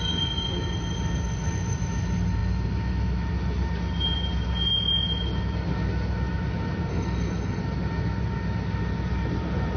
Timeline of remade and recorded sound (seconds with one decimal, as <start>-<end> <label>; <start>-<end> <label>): 0.0-6.9 recorded; 6.9-7.6 remade; 7.6-9.8 recorded